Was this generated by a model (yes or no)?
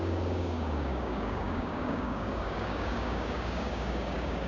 yes